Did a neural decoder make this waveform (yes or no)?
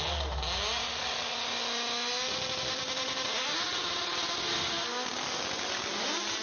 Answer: no